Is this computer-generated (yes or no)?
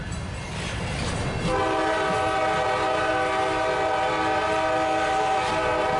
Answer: no